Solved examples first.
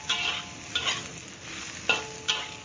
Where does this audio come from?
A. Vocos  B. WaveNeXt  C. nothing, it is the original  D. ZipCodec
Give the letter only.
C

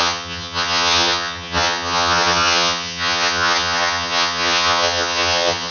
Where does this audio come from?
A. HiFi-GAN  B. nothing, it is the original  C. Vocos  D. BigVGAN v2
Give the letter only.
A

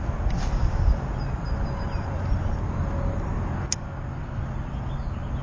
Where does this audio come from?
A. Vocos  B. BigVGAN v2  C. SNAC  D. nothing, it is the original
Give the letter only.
D